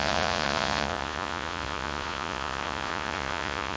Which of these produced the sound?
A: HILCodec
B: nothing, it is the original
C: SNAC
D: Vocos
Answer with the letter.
D